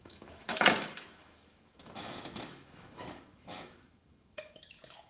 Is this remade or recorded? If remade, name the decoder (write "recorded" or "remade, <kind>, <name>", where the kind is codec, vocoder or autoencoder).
remade, autoencoder, DAC-VAE